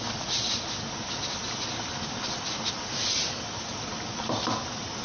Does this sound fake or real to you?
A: real